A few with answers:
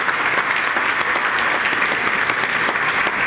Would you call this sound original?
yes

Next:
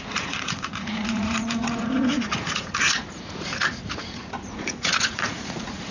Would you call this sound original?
no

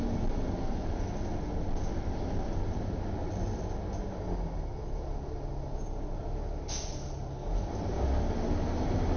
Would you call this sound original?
yes